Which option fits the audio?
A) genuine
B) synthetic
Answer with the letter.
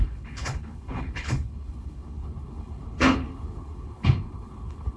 B